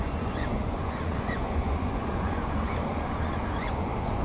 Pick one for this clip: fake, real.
fake